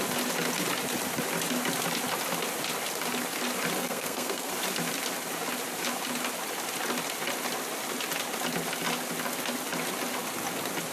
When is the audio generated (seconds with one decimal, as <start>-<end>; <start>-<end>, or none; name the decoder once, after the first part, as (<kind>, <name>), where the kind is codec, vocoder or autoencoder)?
3.8-4.5 (codec, SNAC)